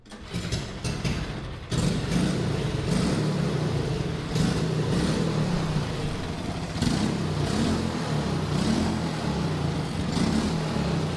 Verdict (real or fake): real